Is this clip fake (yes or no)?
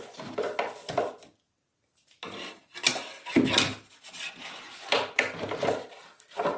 no